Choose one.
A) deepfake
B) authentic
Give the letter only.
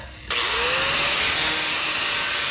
B